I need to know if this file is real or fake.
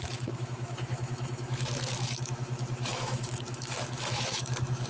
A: fake